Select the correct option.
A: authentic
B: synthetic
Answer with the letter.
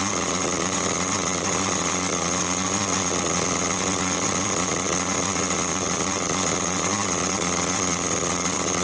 B